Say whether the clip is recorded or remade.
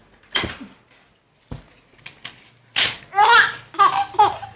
recorded